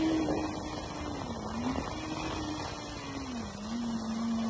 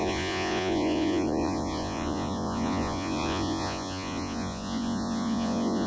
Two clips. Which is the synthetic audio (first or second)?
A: second